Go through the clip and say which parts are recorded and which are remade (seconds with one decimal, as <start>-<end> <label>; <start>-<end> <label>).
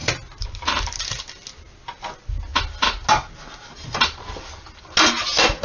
0.0-5.6 recorded